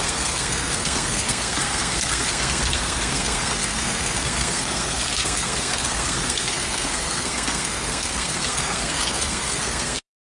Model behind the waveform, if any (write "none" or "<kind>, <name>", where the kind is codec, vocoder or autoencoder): codec, SNAC